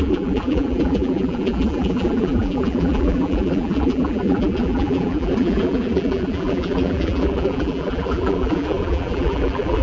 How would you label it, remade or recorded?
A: remade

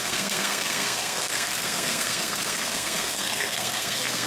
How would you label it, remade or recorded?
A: remade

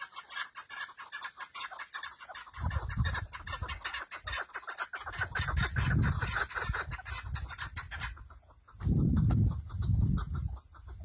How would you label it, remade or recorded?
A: recorded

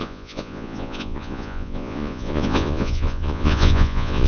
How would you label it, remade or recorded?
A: remade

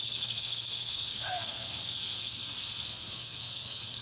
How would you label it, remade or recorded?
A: remade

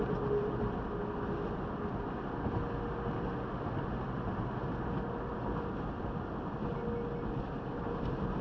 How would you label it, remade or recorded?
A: recorded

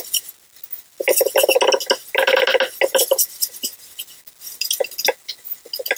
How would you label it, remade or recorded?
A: recorded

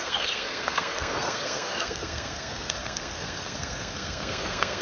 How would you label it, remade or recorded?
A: remade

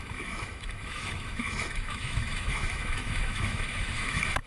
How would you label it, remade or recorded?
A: remade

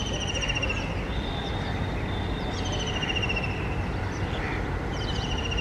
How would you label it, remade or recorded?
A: recorded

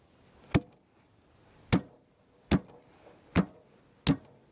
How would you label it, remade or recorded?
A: recorded